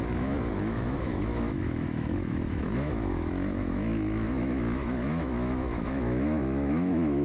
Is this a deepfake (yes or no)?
yes